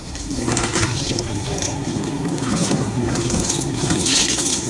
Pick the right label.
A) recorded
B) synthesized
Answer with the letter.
B